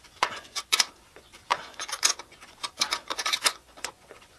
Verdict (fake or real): fake